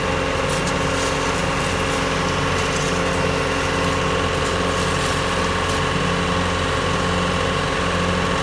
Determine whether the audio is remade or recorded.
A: recorded